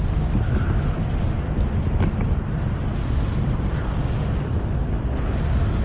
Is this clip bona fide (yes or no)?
yes